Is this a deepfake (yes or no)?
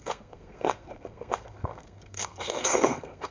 yes